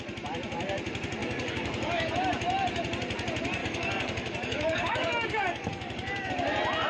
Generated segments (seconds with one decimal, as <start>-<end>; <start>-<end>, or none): 1.2-2.1; 3.6-6.3